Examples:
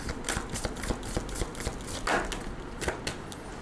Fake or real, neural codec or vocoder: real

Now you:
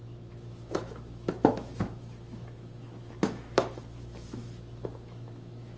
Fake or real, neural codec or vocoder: fake, autoencoder, DAC-VAE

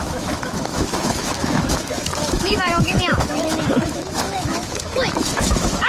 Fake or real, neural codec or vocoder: fake, autoencoder, DAC-VAE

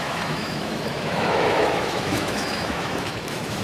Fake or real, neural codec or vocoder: fake, autoencoder, DAC-VAE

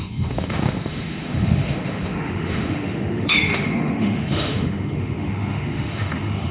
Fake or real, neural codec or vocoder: fake, autoencoder, DAC-VAE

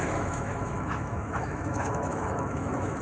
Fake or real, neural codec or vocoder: fake, autoencoder, DAC-VAE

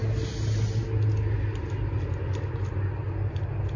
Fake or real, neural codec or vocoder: real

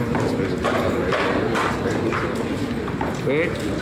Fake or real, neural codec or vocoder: real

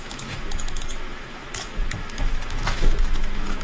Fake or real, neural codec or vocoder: fake, autoencoder, DAC-VAE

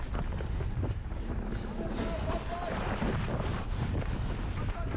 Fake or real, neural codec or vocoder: real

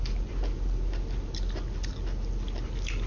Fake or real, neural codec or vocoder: real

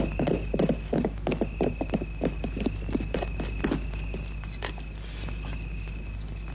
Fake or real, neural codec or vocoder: real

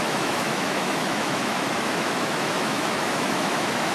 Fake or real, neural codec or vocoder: fake, autoencoder, DAC-VAE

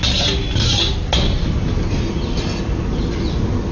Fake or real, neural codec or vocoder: real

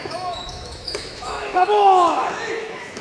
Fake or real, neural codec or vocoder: fake, autoencoder, DAC-VAE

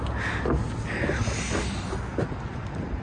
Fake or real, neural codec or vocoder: real